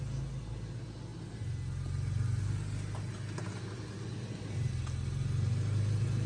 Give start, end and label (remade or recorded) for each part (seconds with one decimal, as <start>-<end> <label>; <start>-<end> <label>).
0.0-6.3 recorded